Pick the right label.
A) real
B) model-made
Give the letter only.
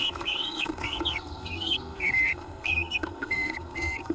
B